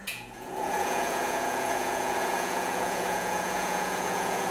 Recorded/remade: remade